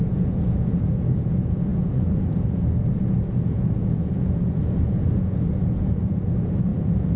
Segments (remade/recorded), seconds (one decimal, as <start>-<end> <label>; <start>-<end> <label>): 0.0-7.2 remade